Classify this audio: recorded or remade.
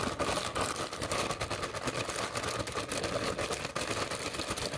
recorded